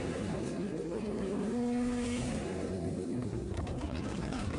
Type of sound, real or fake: fake